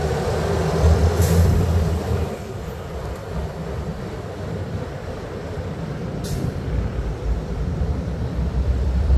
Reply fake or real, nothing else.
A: fake